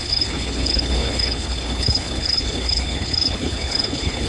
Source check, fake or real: fake